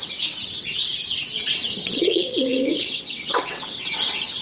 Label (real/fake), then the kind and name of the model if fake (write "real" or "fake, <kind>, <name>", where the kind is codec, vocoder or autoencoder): fake, vocoder, WaveNeXt